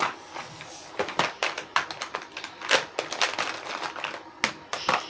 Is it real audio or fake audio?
real